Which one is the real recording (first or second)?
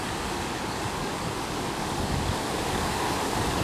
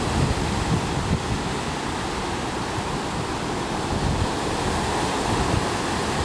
second